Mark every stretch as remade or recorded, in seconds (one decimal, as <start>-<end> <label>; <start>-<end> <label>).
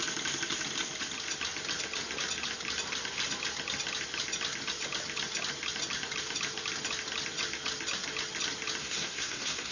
0.0-8.8 recorded; 8.8-9.7 remade